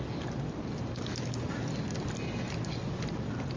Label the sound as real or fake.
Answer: real